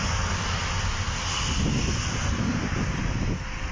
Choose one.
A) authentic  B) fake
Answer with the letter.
A